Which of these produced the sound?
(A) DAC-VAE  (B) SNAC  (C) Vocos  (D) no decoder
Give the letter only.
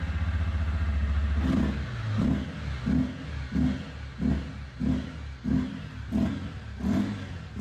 D